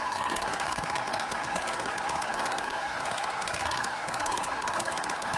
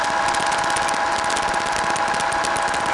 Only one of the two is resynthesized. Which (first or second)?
first